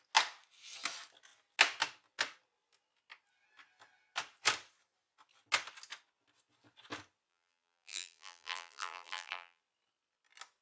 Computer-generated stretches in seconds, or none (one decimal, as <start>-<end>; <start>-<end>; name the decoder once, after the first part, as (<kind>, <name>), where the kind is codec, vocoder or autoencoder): 7.3-9.6 (vocoder, BigVGAN v2)